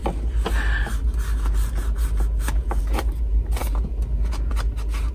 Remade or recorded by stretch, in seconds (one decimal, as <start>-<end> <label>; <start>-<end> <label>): 0.0-5.1 recorded